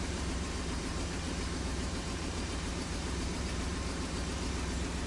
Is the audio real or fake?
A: fake